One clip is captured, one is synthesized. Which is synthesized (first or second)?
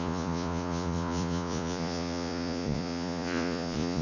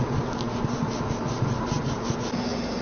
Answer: first